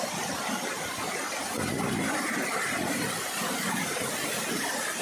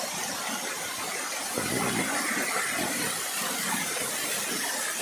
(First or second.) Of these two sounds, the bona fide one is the second